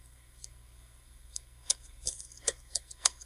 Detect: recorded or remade remade